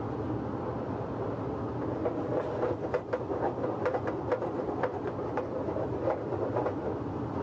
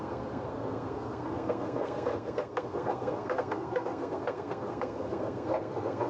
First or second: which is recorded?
first